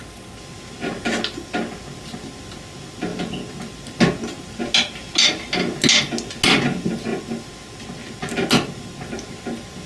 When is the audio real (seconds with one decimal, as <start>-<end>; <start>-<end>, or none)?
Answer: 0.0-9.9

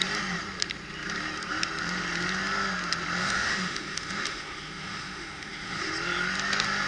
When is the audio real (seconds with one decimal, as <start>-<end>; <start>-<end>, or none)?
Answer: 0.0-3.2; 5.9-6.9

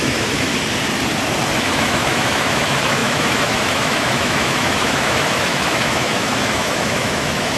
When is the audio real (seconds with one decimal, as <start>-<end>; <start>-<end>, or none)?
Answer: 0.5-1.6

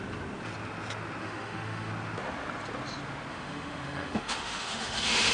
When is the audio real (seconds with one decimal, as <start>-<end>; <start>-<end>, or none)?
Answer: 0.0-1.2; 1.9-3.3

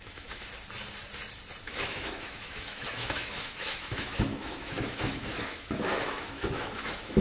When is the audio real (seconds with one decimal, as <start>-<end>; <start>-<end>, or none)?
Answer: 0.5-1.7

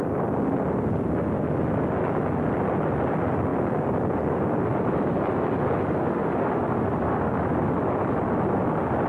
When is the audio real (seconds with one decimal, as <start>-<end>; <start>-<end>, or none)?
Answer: 0.0-9.1

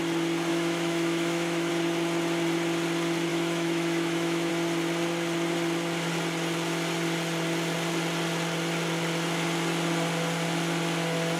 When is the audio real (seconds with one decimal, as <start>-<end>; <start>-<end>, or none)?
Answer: 0.0-0.5; 1.7-3.3; 4.5-11.4

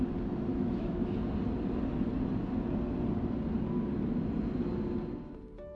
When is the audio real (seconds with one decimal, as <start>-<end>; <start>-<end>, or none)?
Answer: 0.0-0.5; 1.1-5.8